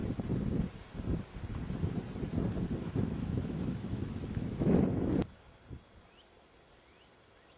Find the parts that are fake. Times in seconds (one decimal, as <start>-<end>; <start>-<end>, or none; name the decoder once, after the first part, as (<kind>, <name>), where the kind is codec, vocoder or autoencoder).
2.8-4.8 (autoencoder, DAC-VAE)